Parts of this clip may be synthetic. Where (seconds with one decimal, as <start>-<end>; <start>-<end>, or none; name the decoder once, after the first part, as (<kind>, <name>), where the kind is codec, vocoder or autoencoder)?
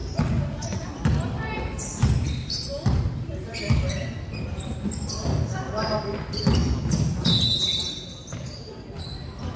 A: none